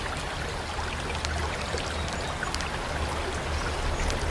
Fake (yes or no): no